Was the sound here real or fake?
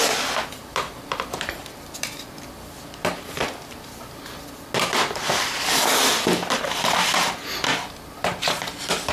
real